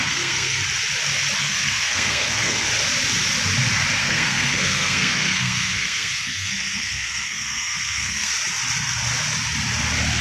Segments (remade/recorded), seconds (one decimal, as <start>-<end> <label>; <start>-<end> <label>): 0.0-0.6 remade; 0.6-1.4 recorded; 1.4-2.7 remade; 2.7-4.0 recorded; 4.0-8.3 remade; 8.3-10.2 recorded